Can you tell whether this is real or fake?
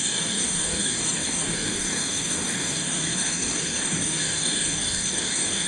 fake